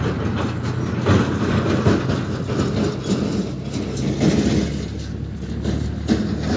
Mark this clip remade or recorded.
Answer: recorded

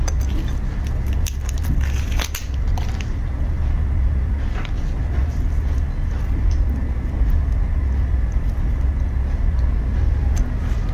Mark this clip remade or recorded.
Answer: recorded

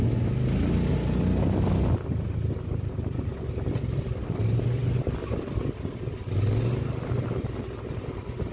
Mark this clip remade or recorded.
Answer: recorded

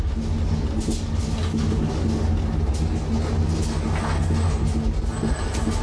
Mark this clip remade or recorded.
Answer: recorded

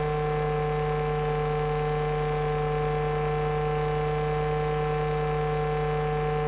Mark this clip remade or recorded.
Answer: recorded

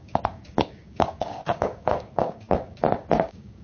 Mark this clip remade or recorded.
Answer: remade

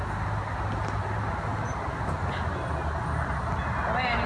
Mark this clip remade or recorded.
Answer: recorded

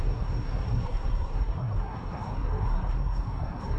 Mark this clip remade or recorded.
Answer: remade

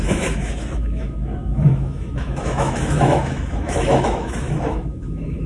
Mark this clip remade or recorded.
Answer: remade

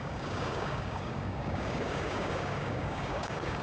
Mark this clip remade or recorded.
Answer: remade